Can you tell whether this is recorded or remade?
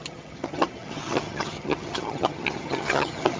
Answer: remade